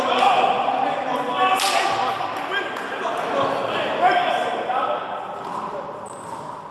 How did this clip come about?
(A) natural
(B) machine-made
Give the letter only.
A